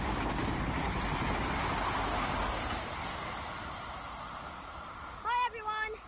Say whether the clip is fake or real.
real